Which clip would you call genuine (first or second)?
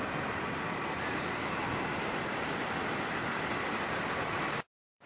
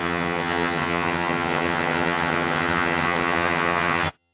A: first